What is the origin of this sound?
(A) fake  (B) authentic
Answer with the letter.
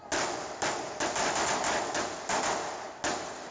B